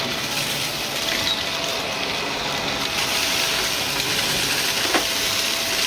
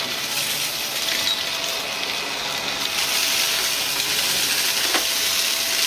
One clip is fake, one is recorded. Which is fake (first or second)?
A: first